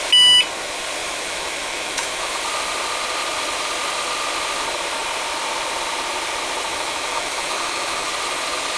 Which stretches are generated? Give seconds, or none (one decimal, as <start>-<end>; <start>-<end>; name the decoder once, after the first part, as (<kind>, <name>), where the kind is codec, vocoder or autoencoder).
1.0-2.4 (autoencoder, DAC-VAE); 6.7-8.1